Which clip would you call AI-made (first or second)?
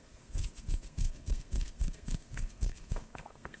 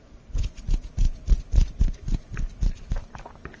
first